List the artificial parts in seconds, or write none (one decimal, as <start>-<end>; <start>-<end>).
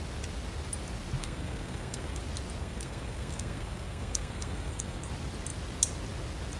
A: 1.2-2.2; 2.6-5.1